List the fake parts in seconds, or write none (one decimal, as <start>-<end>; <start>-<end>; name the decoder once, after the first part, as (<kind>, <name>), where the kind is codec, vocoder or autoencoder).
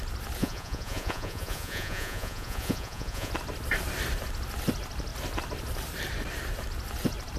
0.4-3.3 (vocoder, Vocos)